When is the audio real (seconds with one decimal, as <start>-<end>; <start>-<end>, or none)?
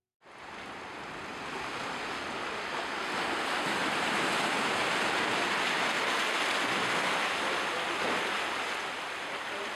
0.0-1.3; 2.8-3.8; 5.5-9.8